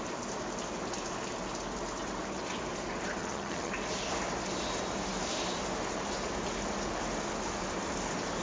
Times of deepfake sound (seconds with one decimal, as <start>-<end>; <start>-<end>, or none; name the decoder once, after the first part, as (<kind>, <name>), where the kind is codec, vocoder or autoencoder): 3.2-3.7 (vocoder, HiFi-GAN)